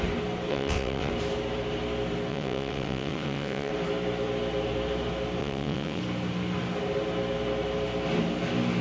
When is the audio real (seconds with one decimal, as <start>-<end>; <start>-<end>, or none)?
0.0-0.5; 1.1-2.3; 3.7-5.4; 6.0-8.8